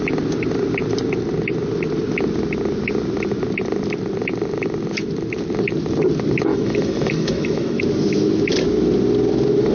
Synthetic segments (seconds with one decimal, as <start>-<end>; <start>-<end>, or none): 6.5-7.8